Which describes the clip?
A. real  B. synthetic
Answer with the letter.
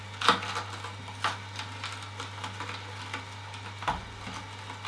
A